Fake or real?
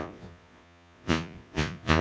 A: fake